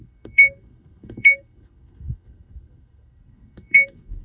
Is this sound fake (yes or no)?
yes